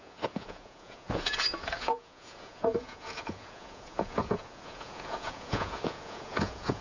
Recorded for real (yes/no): no